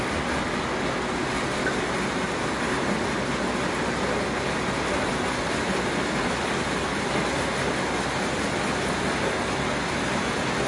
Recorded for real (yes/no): yes